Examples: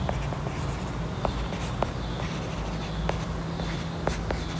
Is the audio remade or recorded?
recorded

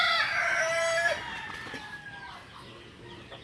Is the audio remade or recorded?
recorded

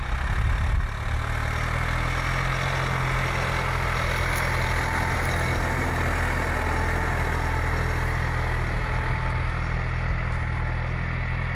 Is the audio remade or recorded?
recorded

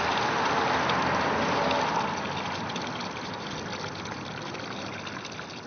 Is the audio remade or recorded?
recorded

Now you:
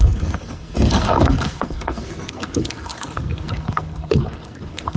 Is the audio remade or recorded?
remade